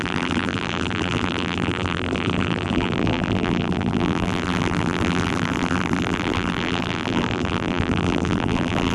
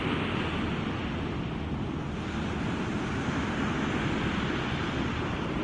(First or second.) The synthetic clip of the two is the first